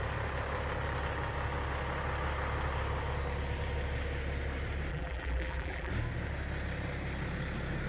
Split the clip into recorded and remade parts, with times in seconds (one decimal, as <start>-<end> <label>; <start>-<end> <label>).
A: 0.0-4.9 recorded; 4.9-5.9 remade; 5.9-7.9 recorded